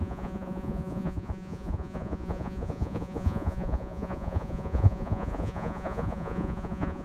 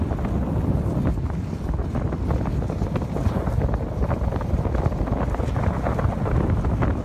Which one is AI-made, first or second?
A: first